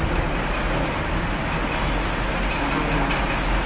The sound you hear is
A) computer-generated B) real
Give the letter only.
B